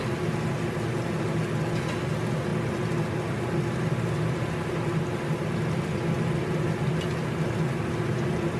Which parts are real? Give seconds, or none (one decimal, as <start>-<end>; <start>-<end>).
0.0-8.6